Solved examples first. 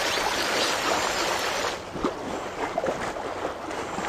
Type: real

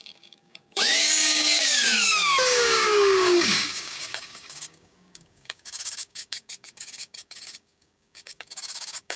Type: fake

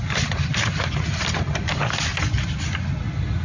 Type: real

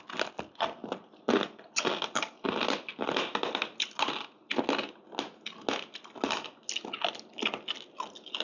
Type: real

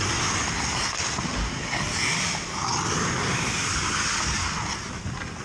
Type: real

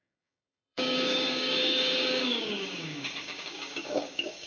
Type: fake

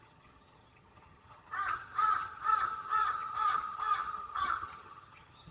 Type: fake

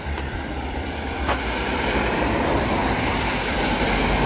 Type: fake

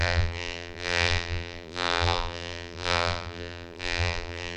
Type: fake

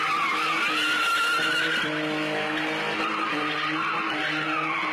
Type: real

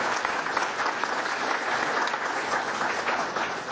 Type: fake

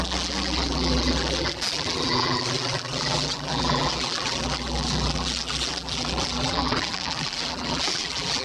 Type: fake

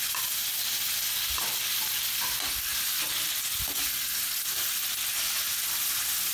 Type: real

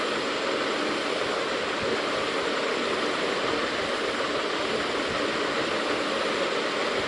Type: real